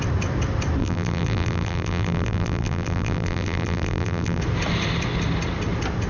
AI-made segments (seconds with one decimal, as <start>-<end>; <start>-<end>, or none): 0.8-4.4